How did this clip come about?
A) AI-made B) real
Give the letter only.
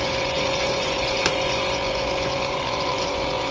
A